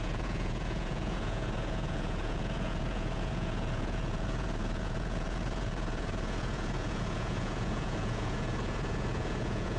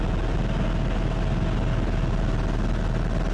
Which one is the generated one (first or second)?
first